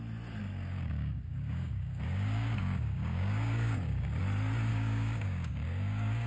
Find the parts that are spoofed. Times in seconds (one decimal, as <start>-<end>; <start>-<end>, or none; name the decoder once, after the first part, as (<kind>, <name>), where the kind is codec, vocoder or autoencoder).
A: 0.4-4.2 (codec, DAC); 4.7-6.3